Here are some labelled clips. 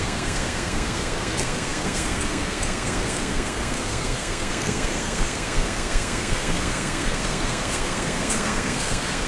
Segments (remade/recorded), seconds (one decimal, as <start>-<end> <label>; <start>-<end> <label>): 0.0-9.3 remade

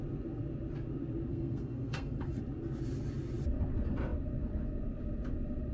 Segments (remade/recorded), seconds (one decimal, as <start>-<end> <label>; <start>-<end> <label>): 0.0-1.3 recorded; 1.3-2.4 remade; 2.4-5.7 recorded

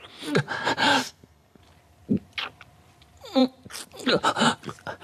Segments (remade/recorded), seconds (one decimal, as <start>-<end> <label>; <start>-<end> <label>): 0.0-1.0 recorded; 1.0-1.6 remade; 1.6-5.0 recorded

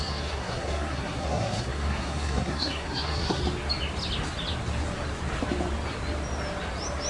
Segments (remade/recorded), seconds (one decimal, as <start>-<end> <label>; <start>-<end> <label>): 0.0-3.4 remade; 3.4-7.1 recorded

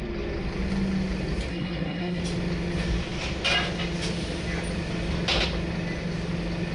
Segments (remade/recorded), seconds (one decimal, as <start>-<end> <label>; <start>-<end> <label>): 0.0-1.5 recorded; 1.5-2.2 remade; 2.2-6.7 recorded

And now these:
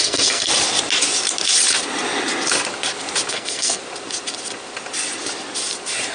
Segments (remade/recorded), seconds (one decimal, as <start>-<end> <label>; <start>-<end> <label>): 0.0-0.5 remade; 0.5-3.3 recorded; 3.3-3.8 remade; 3.8-6.1 recorded